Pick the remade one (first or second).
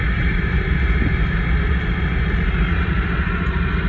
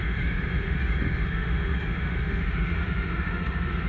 second